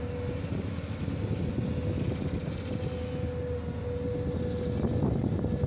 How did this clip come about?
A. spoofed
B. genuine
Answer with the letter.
B